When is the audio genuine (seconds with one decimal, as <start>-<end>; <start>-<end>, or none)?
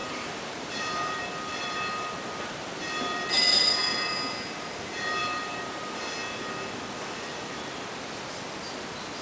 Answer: 1.2-5.2; 6.0-9.2